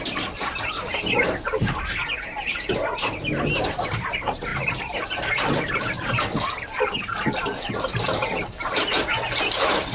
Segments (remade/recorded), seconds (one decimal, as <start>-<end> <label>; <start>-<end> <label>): 0.0-9.9 recorded